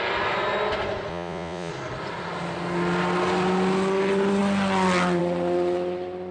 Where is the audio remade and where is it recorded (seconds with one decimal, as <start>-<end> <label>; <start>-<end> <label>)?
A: 0.0-1.1 recorded; 1.1-1.7 remade; 1.7-6.3 recorded